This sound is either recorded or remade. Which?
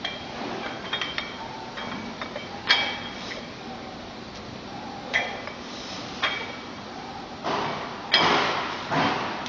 recorded